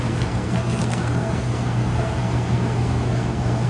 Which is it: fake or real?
fake